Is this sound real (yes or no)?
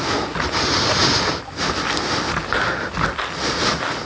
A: yes